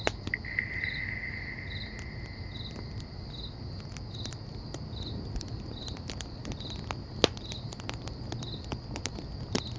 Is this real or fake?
real